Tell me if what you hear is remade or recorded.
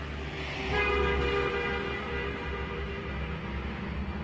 recorded